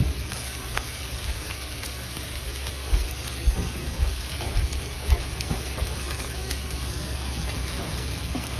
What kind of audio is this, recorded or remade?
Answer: remade